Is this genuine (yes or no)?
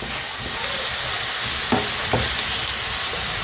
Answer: yes